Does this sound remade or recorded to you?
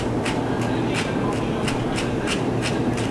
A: recorded